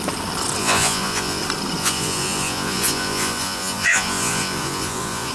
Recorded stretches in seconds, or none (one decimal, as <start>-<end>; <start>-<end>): 0.0-0.6; 1.4-1.8